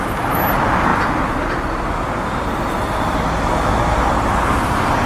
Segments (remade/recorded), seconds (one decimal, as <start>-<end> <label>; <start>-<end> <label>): 0.0-5.1 recorded